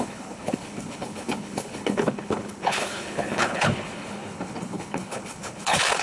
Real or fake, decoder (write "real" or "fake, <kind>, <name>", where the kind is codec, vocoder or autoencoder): fake, codec, HILCodec